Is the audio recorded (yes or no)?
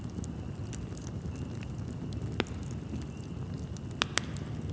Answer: yes